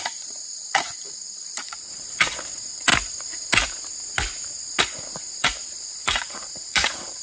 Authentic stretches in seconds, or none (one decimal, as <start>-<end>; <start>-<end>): 2.9-4.8